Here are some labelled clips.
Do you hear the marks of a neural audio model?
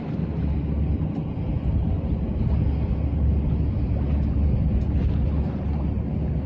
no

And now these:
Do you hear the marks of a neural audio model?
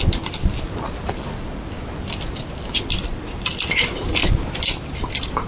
no